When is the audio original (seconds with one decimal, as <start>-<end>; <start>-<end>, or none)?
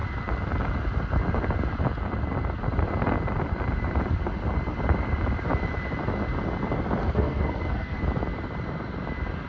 0.0-7.0; 8.0-9.5